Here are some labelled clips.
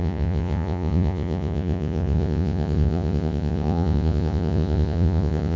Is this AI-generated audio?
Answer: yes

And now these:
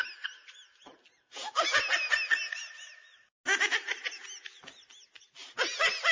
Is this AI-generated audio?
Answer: no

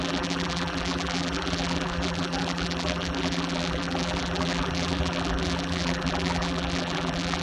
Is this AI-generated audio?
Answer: yes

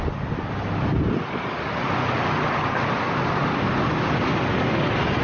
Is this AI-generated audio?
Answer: no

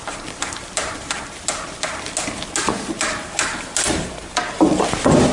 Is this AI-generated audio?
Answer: no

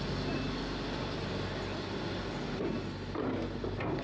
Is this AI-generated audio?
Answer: no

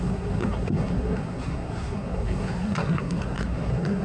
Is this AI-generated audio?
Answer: yes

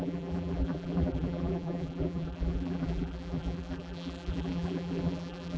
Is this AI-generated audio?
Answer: yes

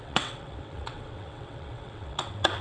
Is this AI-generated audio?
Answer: yes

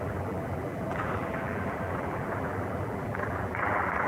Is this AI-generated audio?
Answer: yes